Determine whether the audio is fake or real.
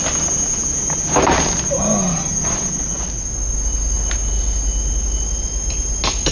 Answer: real